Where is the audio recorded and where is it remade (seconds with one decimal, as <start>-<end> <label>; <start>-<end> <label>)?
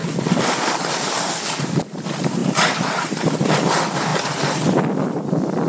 0.0-1.7 remade; 1.7-2.4 recorded; 2.4-3.5 remade; 3.5-5.7 recorded